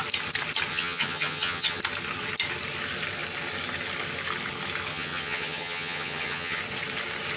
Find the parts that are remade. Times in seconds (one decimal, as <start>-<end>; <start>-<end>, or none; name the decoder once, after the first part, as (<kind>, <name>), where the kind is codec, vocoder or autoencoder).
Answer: 0.7-1.8 (vocoder, HiFi-GAN); 4.9-6.6